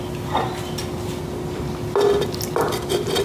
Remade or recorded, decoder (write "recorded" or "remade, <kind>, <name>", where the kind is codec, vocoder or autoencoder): recorded